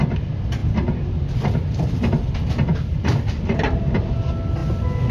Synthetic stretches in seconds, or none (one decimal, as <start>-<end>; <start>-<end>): none